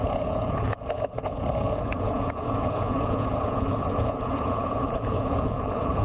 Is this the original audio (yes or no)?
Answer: no